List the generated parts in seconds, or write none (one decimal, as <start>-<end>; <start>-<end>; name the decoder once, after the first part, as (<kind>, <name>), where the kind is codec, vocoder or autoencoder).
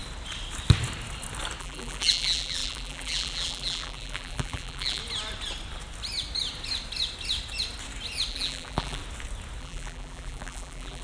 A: 1.6-5.0 (vocoder, BigVGAN v2); 8.3-9.0; 9.6-11.0